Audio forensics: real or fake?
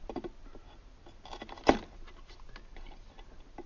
real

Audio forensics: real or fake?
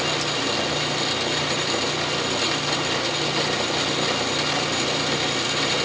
real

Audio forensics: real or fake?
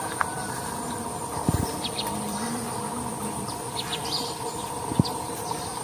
fake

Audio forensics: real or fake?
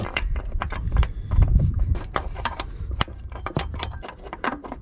fake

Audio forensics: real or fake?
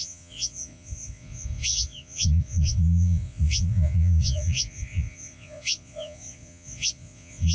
fake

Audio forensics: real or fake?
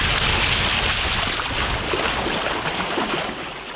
real